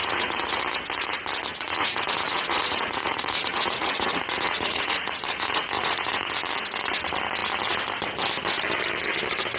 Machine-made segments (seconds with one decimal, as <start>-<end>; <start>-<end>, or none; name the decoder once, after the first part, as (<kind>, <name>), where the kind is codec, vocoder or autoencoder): 0.0-0.6 (vocoder, Vocos); 1.5-6.3